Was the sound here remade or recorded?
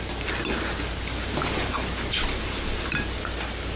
recorded